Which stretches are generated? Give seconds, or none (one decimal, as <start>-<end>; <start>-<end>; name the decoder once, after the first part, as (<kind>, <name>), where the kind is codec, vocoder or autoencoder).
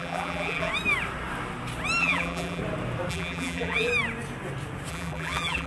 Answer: 0.0-0.7 (vocoder, BigVGAN v2); 2.0-2.6; 3.1-3.9; 4.9-5.7